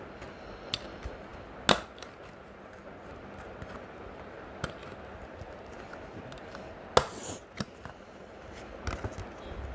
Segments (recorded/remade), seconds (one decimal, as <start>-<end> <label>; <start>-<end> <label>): 0.0-9.7 recorded